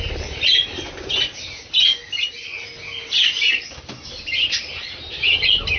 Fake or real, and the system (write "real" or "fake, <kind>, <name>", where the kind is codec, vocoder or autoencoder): real